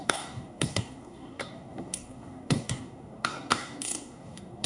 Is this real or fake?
fake